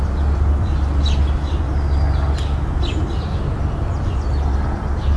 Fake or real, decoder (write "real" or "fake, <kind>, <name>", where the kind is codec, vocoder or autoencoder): real